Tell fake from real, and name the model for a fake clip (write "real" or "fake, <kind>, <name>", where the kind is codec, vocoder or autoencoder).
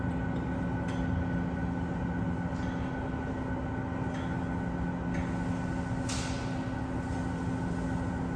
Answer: real